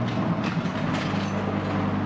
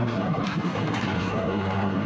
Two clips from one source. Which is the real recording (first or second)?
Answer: first